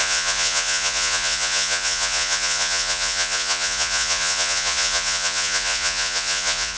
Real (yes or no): no